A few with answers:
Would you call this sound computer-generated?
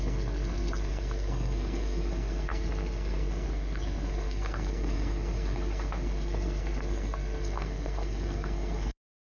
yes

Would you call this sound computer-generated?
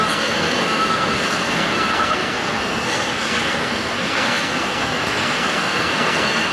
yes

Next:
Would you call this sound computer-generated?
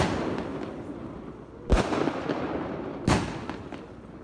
no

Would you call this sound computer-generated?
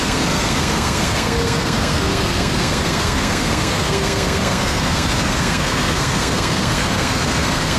yes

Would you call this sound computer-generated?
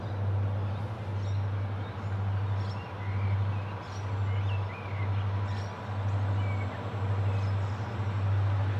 no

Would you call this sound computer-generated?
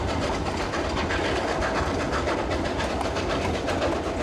no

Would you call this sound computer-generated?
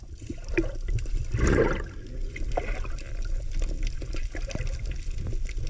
no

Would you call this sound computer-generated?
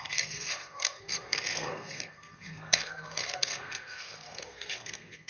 yes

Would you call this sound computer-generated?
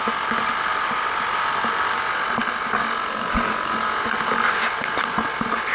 no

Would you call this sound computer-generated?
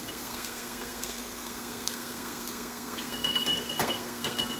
yes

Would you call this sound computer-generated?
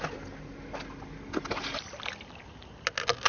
no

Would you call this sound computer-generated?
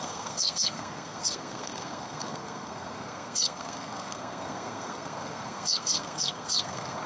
yes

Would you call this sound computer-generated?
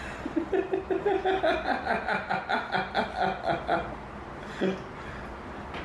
no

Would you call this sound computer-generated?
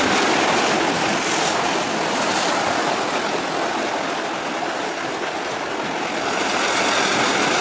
no